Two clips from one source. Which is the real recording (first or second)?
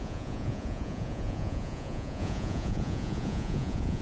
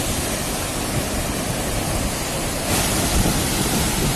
second